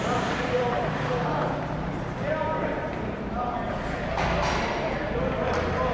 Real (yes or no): no